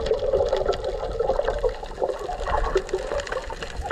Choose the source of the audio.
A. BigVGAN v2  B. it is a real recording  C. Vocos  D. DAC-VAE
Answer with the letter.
B